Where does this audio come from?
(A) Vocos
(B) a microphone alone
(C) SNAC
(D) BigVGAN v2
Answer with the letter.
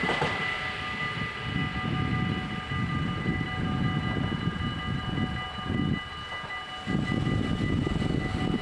B